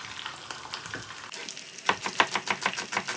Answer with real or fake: real